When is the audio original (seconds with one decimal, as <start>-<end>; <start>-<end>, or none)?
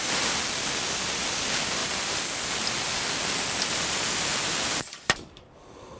1.8-4.3